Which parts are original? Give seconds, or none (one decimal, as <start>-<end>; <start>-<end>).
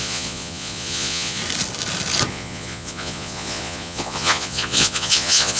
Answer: 1.4-2.3